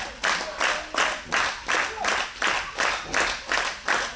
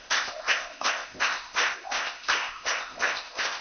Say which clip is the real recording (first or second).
first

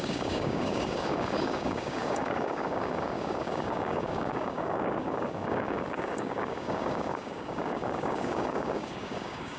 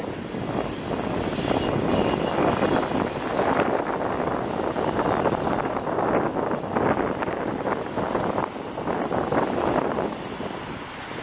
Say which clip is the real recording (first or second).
second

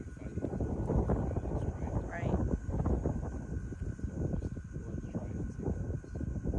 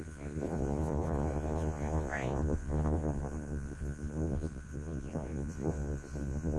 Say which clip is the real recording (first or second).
first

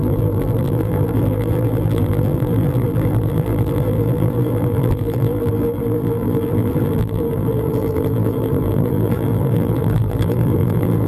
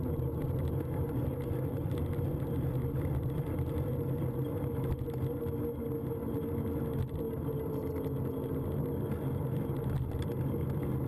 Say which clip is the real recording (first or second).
second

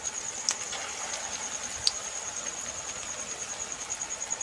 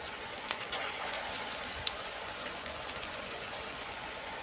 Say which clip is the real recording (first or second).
first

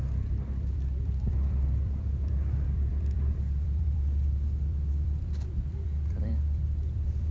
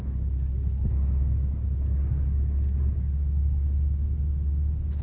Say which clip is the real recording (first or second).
second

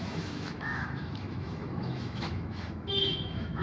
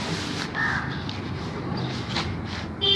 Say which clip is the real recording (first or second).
second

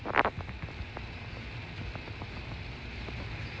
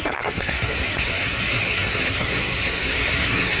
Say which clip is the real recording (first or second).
first